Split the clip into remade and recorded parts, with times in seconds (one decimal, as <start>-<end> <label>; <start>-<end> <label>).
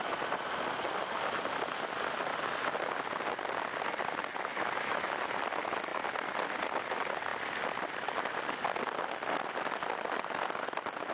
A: 0.0-4.5 recorded; 4.5-5.3 remade; 5.3-11.1 recorded